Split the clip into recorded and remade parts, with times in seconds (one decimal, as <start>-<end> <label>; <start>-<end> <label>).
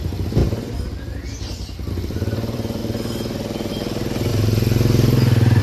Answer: 0.0-0.4 remade; 0.4-1.9 recorded; 1.9-2.8 remade; 2.8-3.7 recorded; 3.7-4.3 remade; 4.3-5.6 recorded